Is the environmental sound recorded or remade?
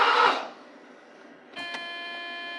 recorded